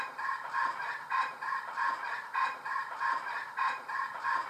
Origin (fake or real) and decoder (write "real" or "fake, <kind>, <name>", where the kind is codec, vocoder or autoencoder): fake, vocoder, BigVGAN v2